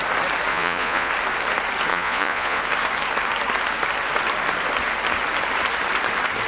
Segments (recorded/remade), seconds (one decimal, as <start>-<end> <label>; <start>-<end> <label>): 0.0-0.5 recorded; 0.5-1.1 remade; 1.1-1.9 recorded; 1.9-2.6 remade; 2.6-6.5 recorded